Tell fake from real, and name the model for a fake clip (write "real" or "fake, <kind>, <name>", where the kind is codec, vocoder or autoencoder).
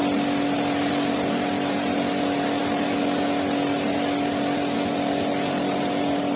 real